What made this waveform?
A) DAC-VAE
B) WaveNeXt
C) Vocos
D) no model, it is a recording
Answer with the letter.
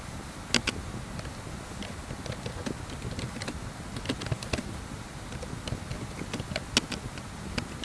D